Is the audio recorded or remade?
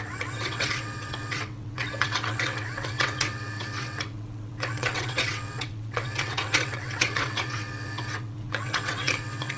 remade